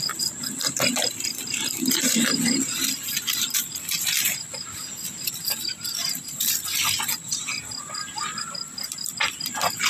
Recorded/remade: remade